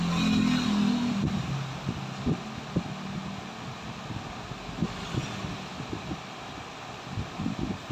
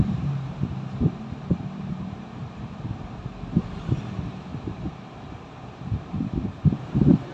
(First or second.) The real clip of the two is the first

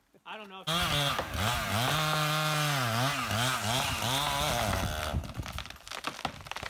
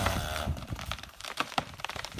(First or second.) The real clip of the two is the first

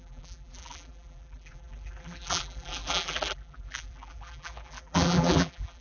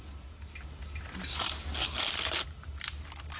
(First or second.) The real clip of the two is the second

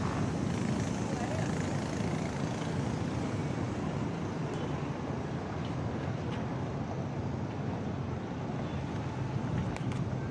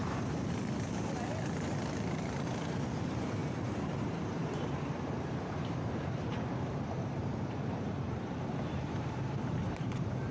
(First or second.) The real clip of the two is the first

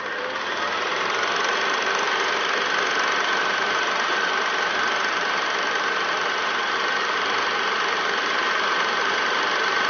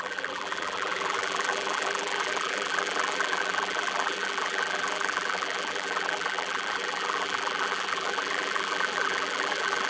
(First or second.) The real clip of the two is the first